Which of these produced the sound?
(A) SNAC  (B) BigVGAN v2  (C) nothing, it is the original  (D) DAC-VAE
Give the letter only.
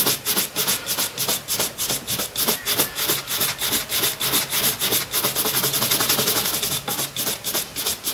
C